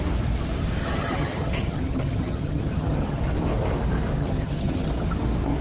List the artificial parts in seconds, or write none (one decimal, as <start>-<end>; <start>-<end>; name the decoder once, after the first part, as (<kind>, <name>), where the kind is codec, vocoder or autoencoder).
0.8-3.2 (vocoder, HiFi-GAN); 4.2-4.9